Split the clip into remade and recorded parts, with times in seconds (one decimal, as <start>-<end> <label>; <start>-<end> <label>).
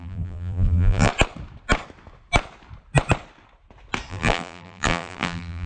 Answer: 0.0-1.1 remade; 1.1-4.1 recorded; 4.1-5.7 remade